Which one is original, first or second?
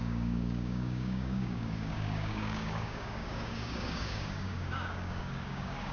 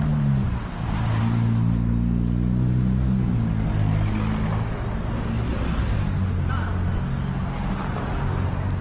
second